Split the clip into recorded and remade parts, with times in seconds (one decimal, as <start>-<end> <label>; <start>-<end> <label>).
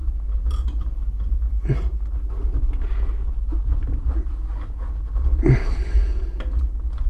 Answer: 0.0-7.1 recorded